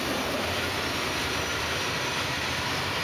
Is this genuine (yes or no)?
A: no